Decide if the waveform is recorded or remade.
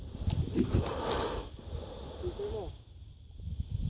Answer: recorded